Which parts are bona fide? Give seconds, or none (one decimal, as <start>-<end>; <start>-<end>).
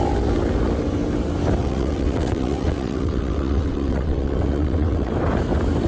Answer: 0.0-1.6; 5.1-5.9